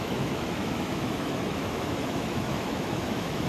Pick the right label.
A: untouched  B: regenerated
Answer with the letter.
B